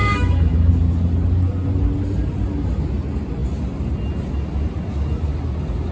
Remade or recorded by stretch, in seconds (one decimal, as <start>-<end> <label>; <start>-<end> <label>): 0.0-0.7 remade; 0.7-5.9 recorded